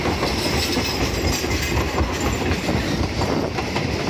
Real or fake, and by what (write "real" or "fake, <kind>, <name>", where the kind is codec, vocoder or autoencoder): real